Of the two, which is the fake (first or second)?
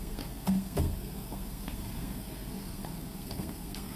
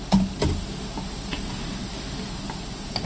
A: first